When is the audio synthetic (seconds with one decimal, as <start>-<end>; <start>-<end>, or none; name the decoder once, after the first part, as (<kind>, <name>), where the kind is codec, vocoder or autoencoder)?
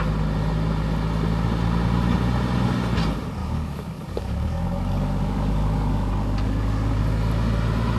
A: 3.4-7.0 (codec, DAC)